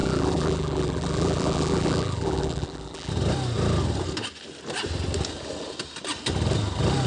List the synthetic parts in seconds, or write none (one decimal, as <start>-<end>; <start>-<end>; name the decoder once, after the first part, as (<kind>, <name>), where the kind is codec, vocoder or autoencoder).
0.0-3.1 (vocoder, BigVGAN v2)